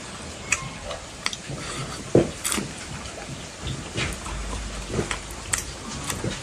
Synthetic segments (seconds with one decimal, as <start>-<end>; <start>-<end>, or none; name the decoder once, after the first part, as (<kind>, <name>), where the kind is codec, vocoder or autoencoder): none